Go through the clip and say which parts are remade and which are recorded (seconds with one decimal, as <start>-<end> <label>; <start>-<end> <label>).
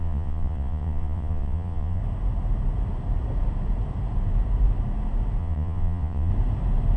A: 0.0-2.0 remade; 2.0-5.4 recorded; 5.4-6.3 remade; 6.3-7.0 recorded